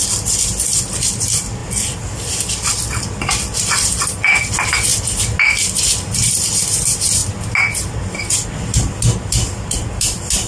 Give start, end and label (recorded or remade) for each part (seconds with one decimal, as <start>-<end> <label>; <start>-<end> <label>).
0.0-4.9 remade; 4.9-5.8 recorded; 5.8-7.2 remade; 7.2-9.5 recorded; 9.5-10.5 remade